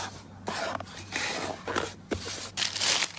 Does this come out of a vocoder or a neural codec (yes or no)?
no